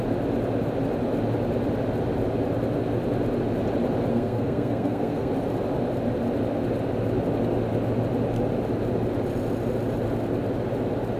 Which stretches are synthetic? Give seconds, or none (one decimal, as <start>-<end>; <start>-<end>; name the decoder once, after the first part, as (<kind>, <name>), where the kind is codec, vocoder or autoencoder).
4.1-5.3 (codec, SNAC)

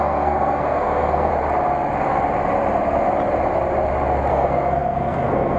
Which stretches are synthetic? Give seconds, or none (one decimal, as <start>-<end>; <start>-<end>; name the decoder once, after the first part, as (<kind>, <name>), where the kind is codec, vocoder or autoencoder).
0.0-1.3 (codec, SNAC); 4.3-5.6

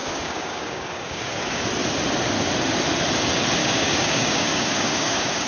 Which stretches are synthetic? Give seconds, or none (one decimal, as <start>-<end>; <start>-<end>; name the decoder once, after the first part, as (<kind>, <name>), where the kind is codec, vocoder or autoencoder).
0.0-1.6 (codec, DAC); 3.6-5.5

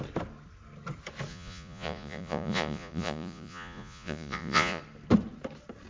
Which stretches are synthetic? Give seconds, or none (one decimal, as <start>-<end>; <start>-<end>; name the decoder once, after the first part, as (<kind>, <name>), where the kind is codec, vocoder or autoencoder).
1.3-4.8 (vocoder, Vocos)

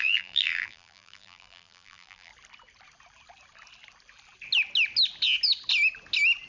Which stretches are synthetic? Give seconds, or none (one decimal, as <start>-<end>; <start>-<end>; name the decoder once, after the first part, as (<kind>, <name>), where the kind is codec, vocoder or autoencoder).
0.0-2.3 (vocoder, BigVGAN v2)

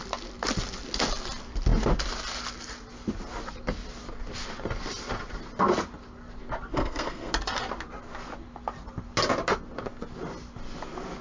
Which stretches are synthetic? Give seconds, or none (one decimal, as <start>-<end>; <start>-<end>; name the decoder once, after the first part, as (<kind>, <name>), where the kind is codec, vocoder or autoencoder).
6.7-7.3 (codec, SNAC)